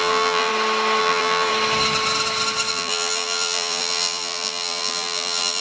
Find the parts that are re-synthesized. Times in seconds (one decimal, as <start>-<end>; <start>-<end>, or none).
0.0-0.5; 1.0-1.5; 2.7-5.6